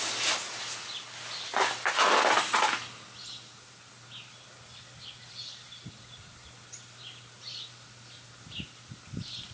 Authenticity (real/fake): real